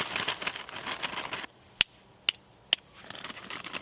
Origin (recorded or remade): recorded